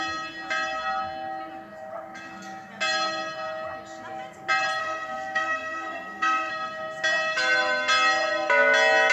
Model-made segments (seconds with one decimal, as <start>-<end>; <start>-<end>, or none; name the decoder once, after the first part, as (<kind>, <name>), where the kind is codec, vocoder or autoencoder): 4.8-6.5 (codec, SNAC)